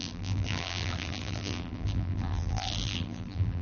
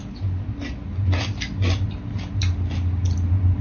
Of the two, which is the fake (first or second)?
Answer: first